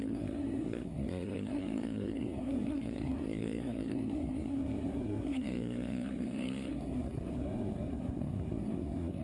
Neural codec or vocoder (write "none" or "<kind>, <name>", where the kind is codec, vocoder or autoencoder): codec, SNAC